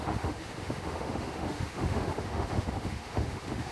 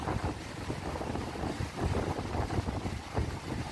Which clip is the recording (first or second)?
second